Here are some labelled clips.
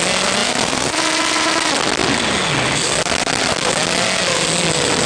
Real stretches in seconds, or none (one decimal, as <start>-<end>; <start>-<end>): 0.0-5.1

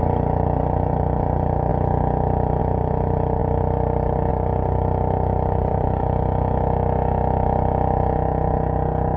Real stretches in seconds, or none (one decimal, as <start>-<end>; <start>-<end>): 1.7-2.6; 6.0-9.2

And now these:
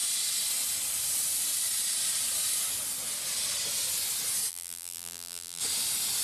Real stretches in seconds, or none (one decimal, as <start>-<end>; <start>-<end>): 0.0-4.5; 5.6-6.2

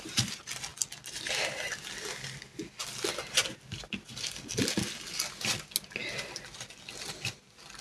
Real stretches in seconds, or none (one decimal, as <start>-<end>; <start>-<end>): 0.0-7.8

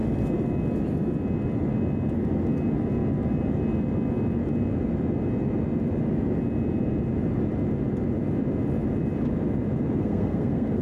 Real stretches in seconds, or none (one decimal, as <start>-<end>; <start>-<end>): 0.0-10.0

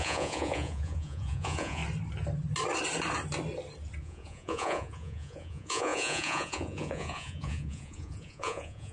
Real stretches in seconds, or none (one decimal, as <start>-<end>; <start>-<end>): 1.8-4.0

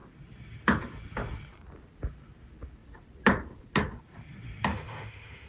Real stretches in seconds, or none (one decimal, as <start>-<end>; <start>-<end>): 0.0-4.7

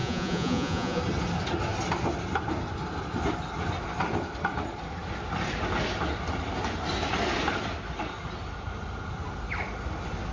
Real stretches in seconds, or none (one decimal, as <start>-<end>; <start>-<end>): 1.0-10.3